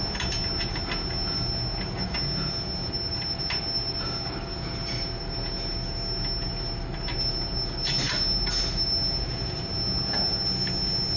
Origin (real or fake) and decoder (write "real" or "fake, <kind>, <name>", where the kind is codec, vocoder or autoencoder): real